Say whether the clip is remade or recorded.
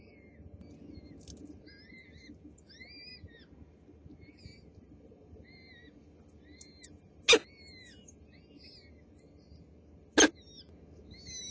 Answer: recorded